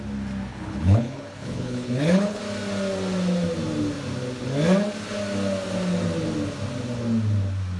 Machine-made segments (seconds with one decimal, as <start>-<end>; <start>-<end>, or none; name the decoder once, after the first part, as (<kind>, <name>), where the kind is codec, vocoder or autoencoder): 0.5-2.4 (codec, HILCodec)